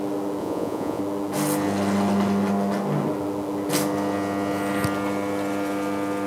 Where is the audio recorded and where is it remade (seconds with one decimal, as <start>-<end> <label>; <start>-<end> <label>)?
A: 0.0-0.4 recorded; 0.4-1.0 remade; 1.0-6.3 recorded